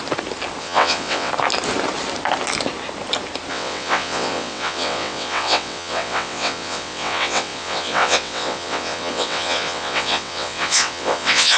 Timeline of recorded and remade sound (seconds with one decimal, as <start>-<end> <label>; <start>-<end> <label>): 0.0-0.6 recorded; 0.6-1.3 remade; 1.3-3.5 recorded; 3.5-11.6 remade